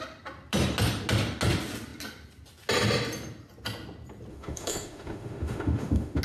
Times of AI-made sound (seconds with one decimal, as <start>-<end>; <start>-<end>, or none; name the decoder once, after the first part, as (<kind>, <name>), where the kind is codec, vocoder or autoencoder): 4.3-6.2 (autoencoder, DAC-VAE)

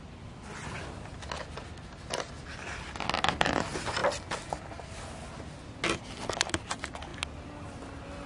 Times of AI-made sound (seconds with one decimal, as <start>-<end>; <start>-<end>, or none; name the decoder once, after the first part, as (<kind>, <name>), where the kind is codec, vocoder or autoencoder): none

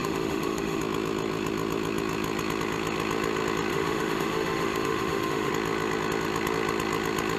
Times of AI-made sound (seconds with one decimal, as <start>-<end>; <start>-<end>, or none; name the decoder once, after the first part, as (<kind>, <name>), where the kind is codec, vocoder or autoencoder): 0.0-0.8 (autoencoder, DAC-VAE); 3.7-5.5

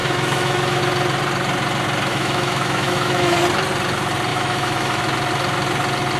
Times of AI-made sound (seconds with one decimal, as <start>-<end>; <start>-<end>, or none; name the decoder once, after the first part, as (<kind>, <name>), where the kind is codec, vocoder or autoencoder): 0.0-0.8 (autoencoder, DAC-VAE); 2.1-3.4; 4.3-5.0

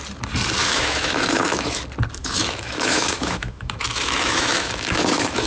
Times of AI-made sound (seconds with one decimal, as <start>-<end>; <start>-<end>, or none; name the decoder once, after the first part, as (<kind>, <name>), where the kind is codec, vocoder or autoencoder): 0.6-1.8 (autoencoder, DAC-VAE); 2.2-5.5